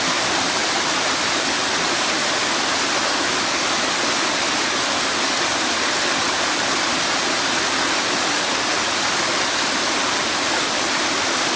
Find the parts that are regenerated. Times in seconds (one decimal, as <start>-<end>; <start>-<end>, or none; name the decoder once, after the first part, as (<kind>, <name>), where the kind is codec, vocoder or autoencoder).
none